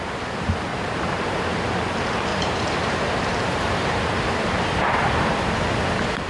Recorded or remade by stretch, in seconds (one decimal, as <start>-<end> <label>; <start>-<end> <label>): 0.0-0.7 recorded; 0.7-1.5 remade; 1.5-2.3 recorded; 2.3-4.4 remade; 4.4-6.3 recorded

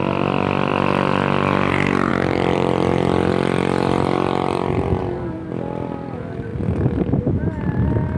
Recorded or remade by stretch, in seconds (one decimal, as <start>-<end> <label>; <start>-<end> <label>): 0.0-2.1 recorded; 2.1-5.0 remade; 5.0-6.5 recorded; 6.5-7.2 remade; 7.2-8.2 recorded

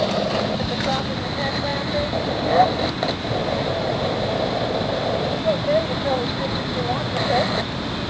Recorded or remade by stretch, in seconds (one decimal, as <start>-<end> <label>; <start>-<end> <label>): 0.0-8.1 recorded

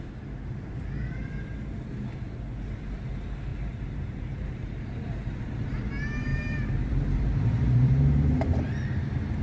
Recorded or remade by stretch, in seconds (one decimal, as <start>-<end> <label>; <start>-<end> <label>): 0.0-3.5 recorded; 3.5-4.9 remade; 4.9-6.3 recorded; 6.3-8.6 remade; 8.6-9.4 recorded

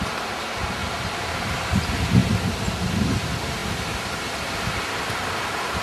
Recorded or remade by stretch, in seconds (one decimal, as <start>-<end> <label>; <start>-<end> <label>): 0.0-0.8 recorded; 0.8-1.4 remade; 1.4-2.2 recorded; 2.2-3.1 remade; 3.1-5.8 recorded

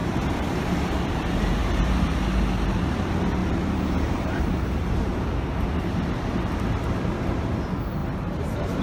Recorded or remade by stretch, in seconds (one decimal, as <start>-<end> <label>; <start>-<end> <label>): 0.0-1.0 remade; 1.0-1.6 recorded; 1.6-2.2 remade; 2.2-3.4 recorded; 3.4-6.4 remade; 6.4-8.0 recorded; 8.0-8.8 remade

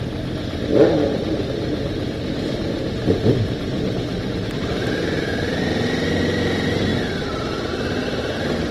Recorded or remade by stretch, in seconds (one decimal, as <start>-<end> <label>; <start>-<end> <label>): 0.0-4.1 recorded; 4.1-5.7 remade; 5.7-8.7 recorded